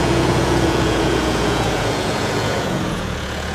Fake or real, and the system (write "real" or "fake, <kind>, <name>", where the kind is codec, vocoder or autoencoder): fake, vocoder, Vocos